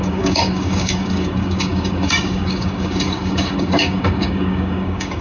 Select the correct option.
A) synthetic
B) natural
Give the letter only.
A